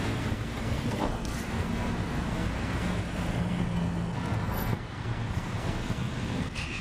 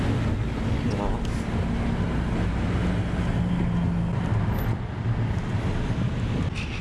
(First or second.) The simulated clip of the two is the first